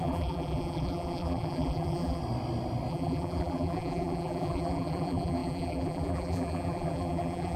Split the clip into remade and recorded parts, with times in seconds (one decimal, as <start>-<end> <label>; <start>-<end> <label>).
0.0-2.2 remade; 2.2-2.9 recorded; 2.9-7.6 remade